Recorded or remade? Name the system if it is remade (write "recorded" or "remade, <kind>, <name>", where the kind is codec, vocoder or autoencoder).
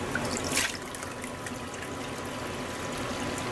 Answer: recorded